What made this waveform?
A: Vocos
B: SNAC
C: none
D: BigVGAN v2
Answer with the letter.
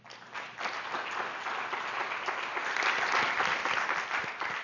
C